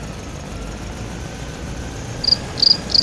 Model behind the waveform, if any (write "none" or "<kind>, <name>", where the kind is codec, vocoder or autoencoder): none